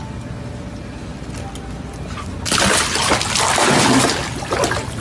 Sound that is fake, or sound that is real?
real